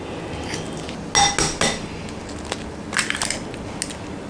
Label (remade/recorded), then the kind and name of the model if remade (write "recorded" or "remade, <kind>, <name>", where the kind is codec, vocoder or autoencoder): recorded